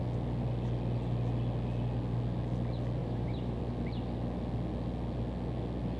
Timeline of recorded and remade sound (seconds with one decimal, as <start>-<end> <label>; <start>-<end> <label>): 0.0-3.0 recorded; 3.0-3.6 remade; 3.6-6.0 recorded